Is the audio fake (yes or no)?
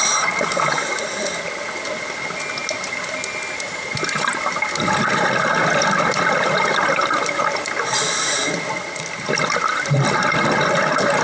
no